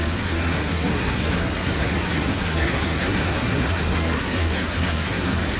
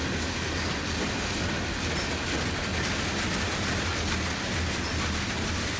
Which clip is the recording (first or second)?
second